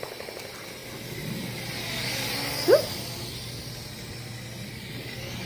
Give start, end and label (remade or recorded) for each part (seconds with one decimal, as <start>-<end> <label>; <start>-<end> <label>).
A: 0.0-5.5 recorded